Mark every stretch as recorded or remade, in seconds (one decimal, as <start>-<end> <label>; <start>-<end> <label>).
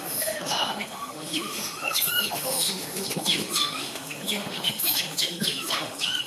0.0-6.3 remade